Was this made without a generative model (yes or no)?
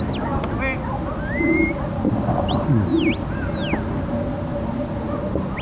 yes